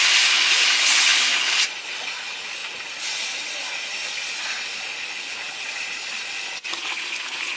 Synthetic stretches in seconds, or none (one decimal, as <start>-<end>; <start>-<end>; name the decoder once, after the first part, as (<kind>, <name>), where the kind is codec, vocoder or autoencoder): none